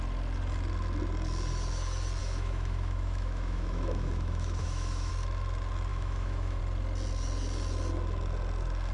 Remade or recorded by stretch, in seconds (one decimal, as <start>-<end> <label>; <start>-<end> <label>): 0.0-2.2 recorded; 2.2-5.1 remade; 5.1-5.9 recorded; 5.9-6.6 remade; 6.6-8.9 recorded